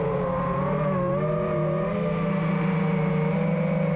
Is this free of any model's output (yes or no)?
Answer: yes